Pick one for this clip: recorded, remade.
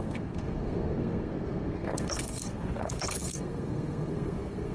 remade